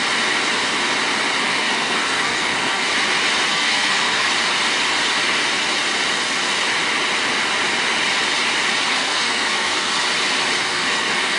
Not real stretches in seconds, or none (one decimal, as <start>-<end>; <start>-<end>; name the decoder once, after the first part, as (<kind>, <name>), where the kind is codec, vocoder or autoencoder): 1.4-2.9 (codec, SNAC); 3.5-4.3; 8.9-9.9; 10.6-11.4